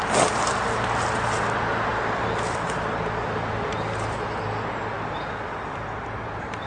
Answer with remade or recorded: recorded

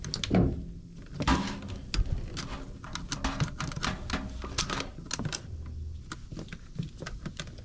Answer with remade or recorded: recorded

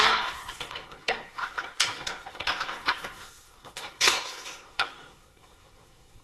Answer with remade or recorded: remade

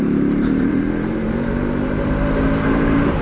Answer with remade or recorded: remade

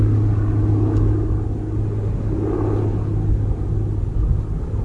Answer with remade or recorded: recorded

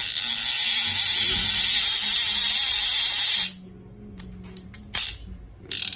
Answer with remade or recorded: recorded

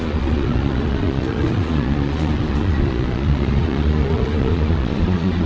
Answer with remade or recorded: remade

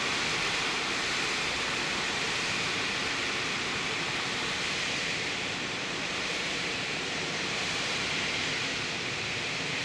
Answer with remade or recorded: remade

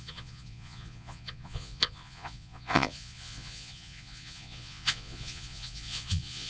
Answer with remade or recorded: remade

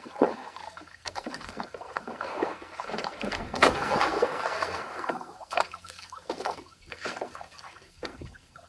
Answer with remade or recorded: remade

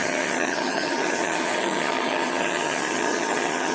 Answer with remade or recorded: remade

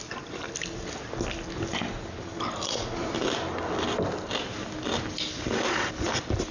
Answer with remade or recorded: recorded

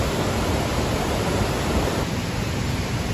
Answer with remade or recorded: remade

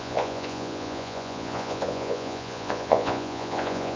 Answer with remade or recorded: remade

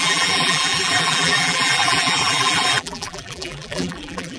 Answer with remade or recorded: remade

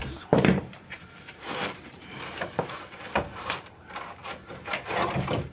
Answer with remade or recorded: remade